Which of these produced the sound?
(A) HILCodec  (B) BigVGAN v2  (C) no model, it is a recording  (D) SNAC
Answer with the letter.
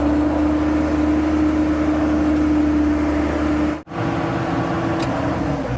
C